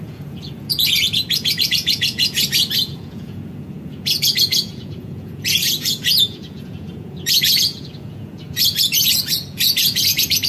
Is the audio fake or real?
fake